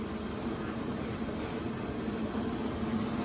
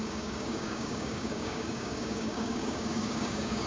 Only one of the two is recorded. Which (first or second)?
first